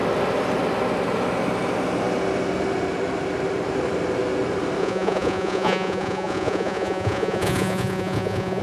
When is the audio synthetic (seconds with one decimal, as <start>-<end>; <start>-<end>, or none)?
4.8-8.6